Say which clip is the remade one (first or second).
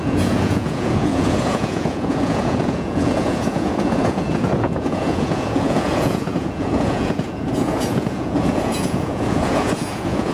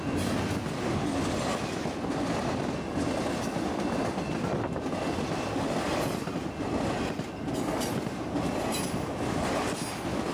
first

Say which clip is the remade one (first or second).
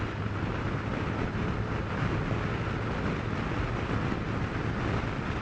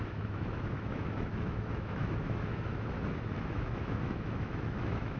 second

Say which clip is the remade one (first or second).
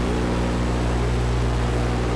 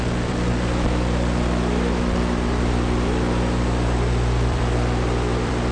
second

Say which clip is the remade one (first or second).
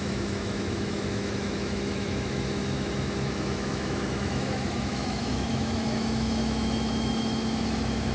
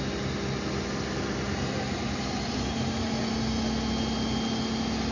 first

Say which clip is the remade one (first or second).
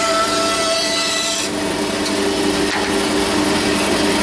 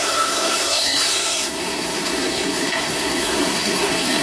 second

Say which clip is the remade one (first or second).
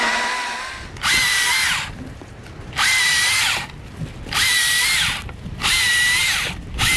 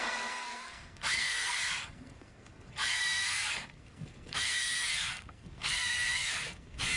second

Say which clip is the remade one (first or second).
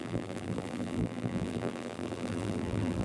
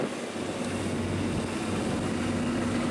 first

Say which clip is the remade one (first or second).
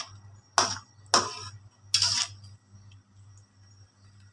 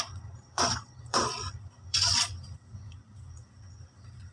second